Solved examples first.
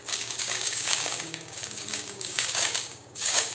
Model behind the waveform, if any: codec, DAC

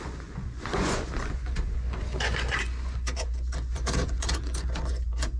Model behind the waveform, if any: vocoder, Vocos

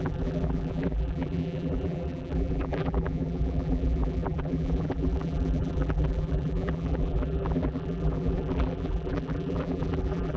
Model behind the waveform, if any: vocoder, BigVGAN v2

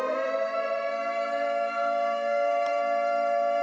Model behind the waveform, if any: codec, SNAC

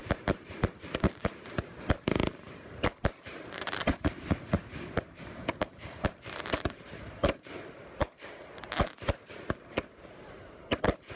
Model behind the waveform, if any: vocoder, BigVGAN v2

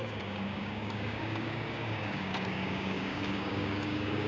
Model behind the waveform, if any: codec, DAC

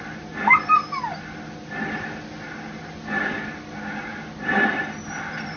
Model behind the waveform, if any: none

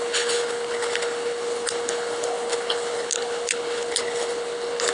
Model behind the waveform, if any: codec, HILCodec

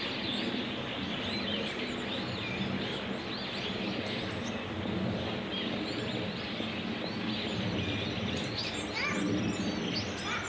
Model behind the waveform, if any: none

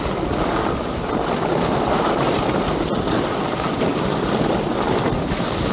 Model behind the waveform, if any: none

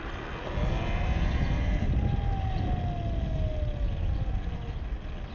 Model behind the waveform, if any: none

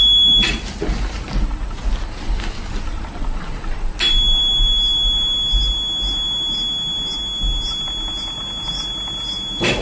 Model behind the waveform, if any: none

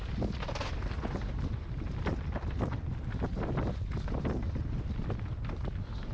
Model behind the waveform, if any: none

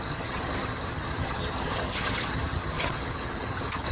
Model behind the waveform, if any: vocoder, HiFi-GAN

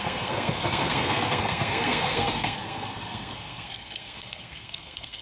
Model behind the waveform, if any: codec, SNAC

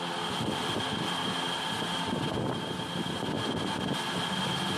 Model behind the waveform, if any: none